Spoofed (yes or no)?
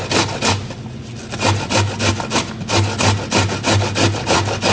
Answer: no